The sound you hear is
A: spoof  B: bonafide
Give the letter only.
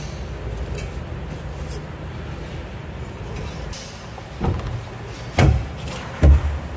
B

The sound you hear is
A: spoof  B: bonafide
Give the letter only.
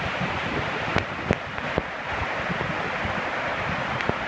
B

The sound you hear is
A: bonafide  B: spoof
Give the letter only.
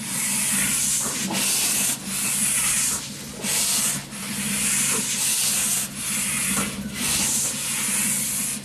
A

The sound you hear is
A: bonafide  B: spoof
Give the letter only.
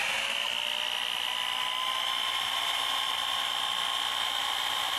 A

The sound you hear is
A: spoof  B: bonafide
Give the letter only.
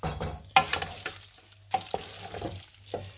B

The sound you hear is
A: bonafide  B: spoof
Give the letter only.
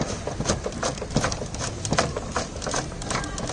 A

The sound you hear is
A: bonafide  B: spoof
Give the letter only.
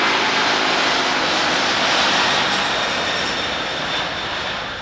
A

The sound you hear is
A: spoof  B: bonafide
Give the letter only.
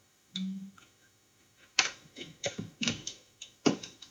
A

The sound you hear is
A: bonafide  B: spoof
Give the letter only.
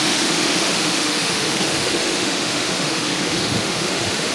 B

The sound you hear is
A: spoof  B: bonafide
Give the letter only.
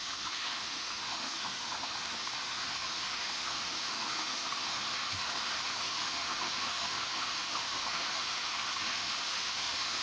A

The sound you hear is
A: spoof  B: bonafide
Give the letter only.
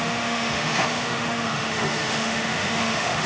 A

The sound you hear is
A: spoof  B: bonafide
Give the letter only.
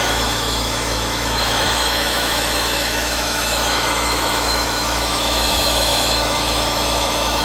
A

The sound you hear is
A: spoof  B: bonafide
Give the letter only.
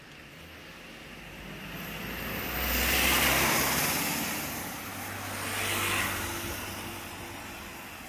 B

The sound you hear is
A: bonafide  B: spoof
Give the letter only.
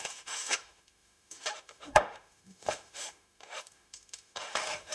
B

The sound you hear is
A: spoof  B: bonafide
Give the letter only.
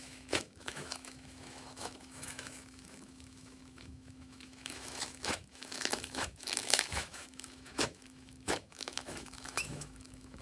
A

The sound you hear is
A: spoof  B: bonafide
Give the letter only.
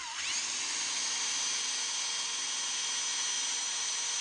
B